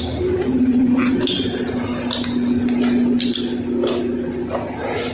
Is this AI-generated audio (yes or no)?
no